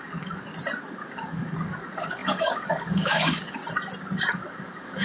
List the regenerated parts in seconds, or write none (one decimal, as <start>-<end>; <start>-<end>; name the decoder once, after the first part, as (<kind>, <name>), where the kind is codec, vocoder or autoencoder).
0.0-0.5 (codec, DAC); 1.1-3.6; 4.3-5.0